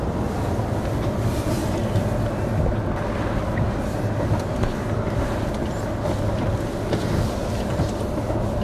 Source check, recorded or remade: recorded